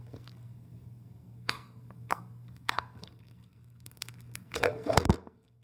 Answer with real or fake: fake